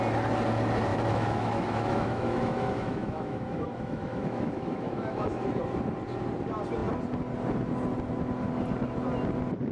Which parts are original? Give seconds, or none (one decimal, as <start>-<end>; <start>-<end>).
0.0-0.9; 5.6-9.7